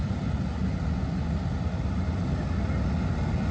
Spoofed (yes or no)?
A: no